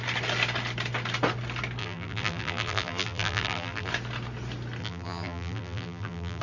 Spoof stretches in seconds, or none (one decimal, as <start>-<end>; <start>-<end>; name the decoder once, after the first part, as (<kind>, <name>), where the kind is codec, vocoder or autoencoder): 1.8-3.9 (vocoder, BigVGAN v2); 4.8-6.4